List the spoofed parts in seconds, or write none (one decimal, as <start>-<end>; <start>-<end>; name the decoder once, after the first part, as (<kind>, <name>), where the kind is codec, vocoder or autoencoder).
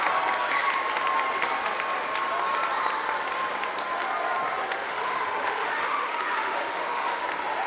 4.8-7.2 (autoencoder, DAC-VAE)